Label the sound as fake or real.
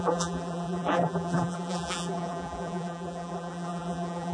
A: fake